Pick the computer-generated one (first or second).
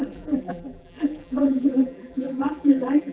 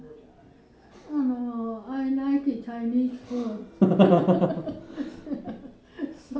first